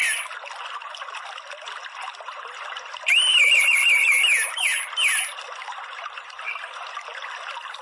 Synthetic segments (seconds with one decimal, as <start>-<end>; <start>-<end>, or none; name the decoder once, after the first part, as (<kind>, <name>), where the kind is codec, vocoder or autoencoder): none